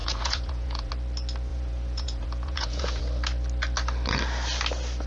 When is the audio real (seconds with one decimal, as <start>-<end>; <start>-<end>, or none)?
0.9-1.5; 3.0-5.1